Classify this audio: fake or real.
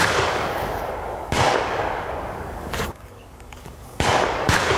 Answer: fake